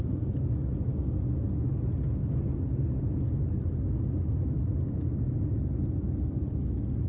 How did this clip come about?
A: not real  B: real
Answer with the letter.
B